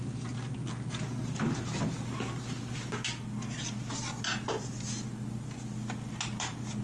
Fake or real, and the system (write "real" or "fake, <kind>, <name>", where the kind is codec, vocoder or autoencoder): real